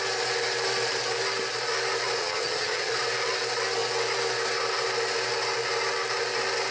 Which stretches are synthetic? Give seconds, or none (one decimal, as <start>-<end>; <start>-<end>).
2.2-2.9